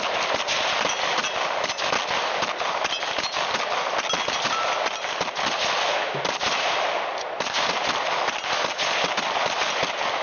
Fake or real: real